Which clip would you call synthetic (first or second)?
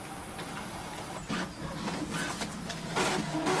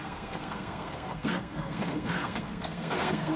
second